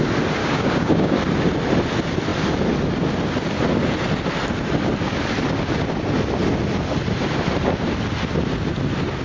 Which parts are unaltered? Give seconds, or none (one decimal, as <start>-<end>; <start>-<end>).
0.0-0.4; 1.2-9.2